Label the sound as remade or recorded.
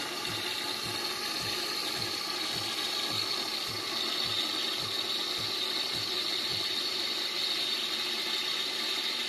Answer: recorded